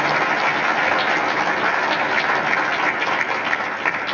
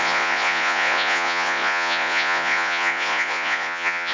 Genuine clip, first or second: first